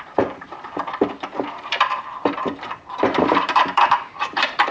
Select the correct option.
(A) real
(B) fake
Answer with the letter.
B